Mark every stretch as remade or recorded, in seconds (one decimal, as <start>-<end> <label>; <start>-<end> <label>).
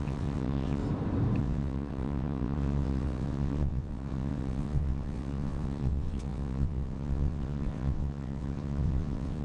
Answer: 0.0-0.8 remade; 0.8-1.4 recorded; 1.4-9.4 remade